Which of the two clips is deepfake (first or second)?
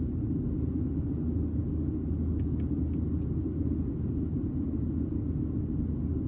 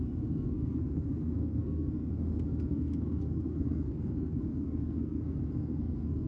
second